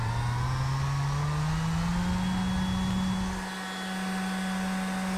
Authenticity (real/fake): real